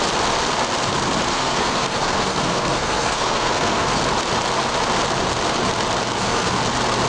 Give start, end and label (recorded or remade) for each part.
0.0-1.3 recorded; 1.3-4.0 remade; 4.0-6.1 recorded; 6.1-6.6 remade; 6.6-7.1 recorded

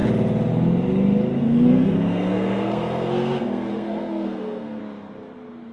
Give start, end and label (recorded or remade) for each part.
0.0-1.4 recorded; 1.4-4.8 remade; 4.8-5.7 recorded